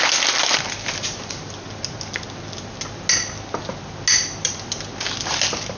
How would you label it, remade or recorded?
recorded